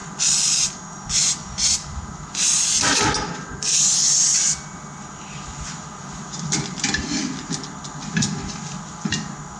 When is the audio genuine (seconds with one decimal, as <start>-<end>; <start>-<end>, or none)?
0.0-9.6